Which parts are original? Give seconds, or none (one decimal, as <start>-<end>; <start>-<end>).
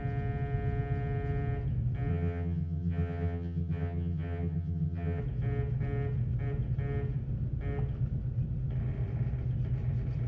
0.0-2.1; 5.2-10.3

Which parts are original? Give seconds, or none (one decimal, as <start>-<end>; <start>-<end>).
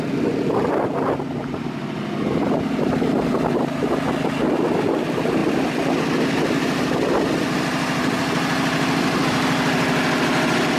0.0-10.8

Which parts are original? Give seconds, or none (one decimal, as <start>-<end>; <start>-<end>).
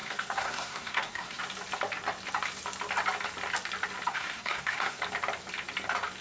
1.4-4.1; 5.0-6.2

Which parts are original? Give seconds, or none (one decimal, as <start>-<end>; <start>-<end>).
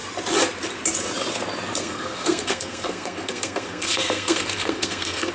0.0-1.8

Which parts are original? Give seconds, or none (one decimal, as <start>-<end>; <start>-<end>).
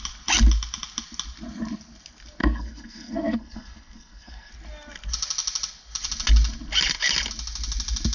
0.0-2.4; 4.5-8.1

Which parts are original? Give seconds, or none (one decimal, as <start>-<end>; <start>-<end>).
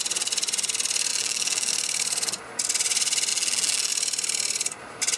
0.0-1.1; 1.7-3.3; 3.9-5.2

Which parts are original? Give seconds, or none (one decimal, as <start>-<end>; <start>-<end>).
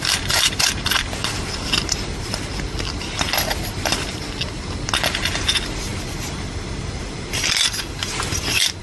0.0-8.8